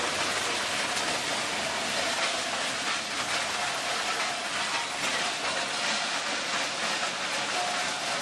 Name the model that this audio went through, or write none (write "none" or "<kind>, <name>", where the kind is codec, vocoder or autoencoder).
none